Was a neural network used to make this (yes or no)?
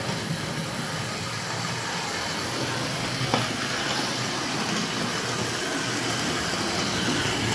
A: no